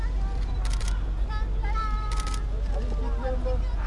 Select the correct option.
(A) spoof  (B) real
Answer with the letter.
B